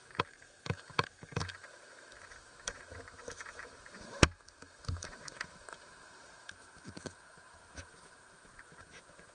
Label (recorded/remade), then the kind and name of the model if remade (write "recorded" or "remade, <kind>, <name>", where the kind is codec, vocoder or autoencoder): remade, autoencoder, DAC-VAE